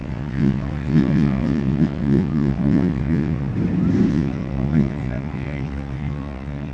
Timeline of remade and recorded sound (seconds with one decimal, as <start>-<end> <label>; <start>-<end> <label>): 0.0-3.5 remade; 3.5-4.1 recorded; 4.1-6.7 remade

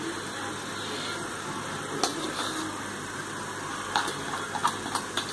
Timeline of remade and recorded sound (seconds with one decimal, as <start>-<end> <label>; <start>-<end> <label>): 0.0-5.3 recorded

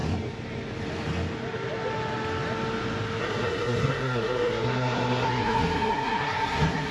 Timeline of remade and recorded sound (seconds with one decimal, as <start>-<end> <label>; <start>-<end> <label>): 0.0-3.2 recorded; 3.2-6.9 remade

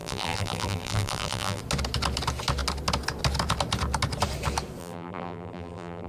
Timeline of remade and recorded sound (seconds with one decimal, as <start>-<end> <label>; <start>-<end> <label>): 0.0-1.6 remade; 1.6-4.8 recorded; 4.8-6.1 remade

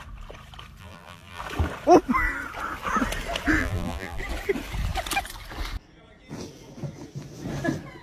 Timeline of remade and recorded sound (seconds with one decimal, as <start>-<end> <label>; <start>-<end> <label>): 0.0-0.8 recorded; 0.8-1.4 remade; 1.4-3.6 recorded; 3.6-4.2 remade; 4.2-8.0 recorded